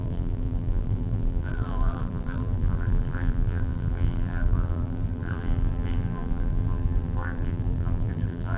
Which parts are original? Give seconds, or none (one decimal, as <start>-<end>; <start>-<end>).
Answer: none